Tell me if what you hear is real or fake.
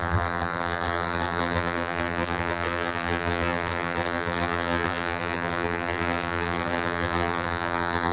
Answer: fake